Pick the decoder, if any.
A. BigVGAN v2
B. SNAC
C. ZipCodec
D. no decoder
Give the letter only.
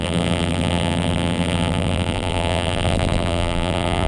A